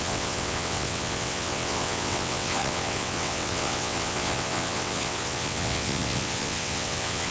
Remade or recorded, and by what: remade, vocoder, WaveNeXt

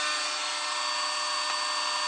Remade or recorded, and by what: recorded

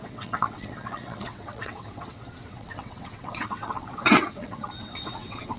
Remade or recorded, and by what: remade, vocoder, WaveNeXt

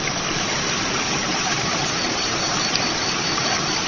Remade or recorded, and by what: recorded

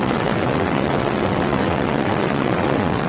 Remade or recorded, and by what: remade, vocoder, WaveNeXt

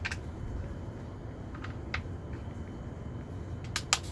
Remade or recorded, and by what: recorded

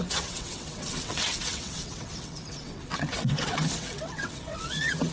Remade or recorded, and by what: remade, vocoder, WaveNeXt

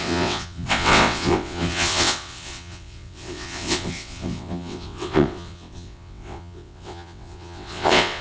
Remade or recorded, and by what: remade, vocoder, WaveNeXt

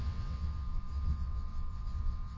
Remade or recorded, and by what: remade, vocoder, WaveNeXt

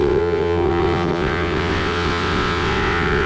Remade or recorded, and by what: remade, vocoder, WaveNeXt